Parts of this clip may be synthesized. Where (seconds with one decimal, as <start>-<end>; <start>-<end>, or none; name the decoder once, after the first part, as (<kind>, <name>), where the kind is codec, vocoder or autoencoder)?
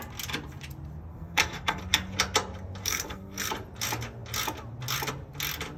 1.1-1.8 (codec, SNAC); 2.8-3.5